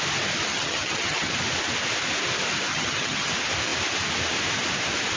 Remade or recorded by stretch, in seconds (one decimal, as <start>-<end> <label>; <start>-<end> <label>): 0.0-0.5 recorded; 0.5-1.3 remade; 1.3-2.7 recorded; 2.7-3.3 remade; 3.3-5.2 recorded